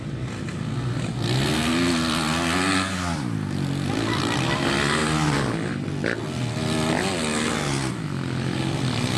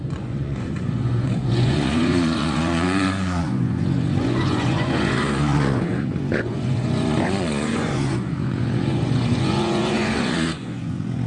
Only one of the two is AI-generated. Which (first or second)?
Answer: second